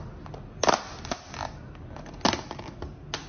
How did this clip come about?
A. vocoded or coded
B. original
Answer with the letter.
B